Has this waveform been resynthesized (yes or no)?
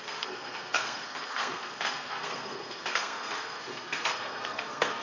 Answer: yes